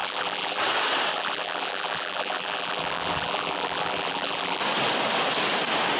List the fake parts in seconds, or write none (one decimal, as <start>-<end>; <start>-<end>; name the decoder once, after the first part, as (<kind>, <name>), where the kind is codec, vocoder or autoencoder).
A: 0.0-0.6 (vocoder, BigVGAN v2); 1.1-4.6